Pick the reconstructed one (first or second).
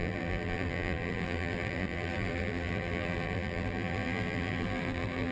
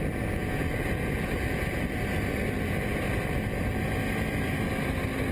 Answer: first